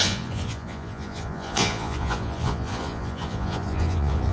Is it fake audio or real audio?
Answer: fake